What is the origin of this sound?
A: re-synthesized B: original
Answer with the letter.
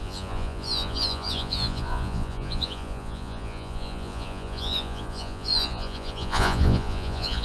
A